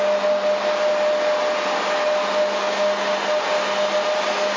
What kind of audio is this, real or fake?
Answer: real